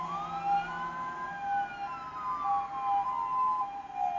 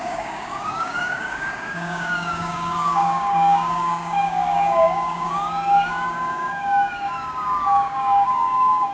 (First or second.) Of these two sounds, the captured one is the first